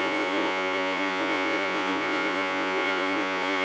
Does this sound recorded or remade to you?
remade